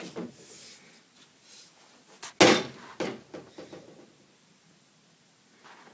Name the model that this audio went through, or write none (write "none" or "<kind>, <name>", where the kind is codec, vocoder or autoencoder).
none